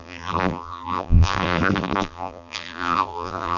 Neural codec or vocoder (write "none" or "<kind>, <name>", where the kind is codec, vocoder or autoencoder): vocoder, BigVGAN v2